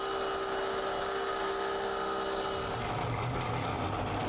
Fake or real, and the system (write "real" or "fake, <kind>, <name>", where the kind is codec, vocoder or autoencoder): real